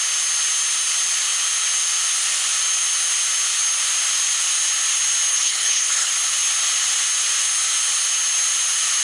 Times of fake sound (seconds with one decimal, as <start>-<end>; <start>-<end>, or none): 5.3-6.1